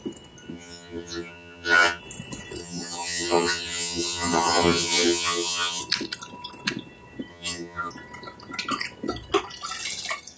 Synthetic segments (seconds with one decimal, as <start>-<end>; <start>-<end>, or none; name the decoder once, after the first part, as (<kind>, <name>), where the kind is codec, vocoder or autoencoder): 0.5-2.0 (vocoder, HiFi-GAN); 2.6-5.8; 7.3-7.9